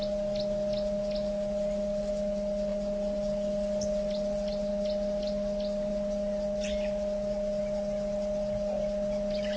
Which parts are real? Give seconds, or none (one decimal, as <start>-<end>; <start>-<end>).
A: 0.0-9.6